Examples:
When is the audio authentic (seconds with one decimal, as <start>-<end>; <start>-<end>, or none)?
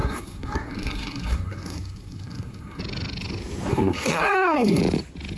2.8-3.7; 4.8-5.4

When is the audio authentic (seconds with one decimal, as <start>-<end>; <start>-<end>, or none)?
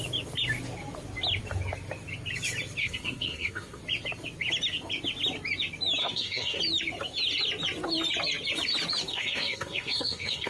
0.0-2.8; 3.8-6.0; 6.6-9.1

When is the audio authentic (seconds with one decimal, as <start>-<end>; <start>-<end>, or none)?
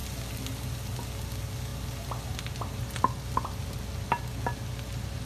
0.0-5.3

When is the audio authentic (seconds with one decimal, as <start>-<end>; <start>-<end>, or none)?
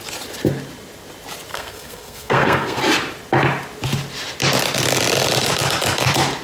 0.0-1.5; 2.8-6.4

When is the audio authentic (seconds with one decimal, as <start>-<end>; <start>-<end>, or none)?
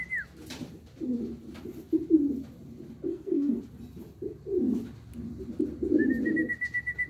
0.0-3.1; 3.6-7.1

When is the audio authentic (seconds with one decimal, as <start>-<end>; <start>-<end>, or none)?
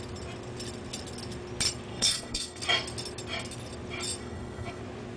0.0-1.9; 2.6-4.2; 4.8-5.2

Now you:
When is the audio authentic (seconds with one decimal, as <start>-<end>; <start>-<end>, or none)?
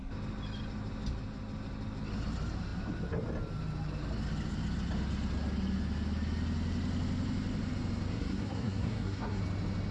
0.0-8.1; 9.4-9.9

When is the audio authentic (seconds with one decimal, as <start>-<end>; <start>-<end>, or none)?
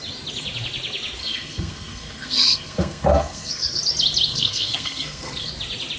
0.0-1.2; 3.8-4.3; 5.5-6.0